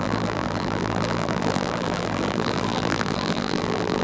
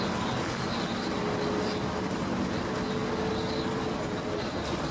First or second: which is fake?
first